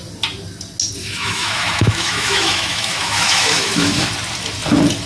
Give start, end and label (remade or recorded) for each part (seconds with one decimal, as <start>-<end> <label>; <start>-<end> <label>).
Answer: 0.0-1.0 recorded; 1.0-4.1 remade; 4.1-5.1 recorded